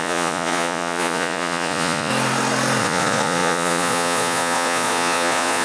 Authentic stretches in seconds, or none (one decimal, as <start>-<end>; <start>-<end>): 2.1-2.8